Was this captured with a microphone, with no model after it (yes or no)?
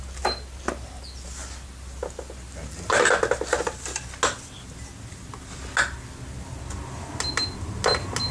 yes